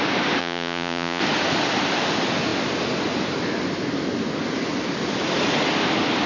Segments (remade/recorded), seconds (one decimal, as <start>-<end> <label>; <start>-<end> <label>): 0.0-0.4 recorded; 0.4-1.2 remade; 1.2-6.3 recorded

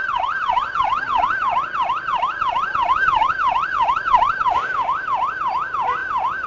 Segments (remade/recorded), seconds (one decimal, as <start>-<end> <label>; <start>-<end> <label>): 0.0-6.5 recorded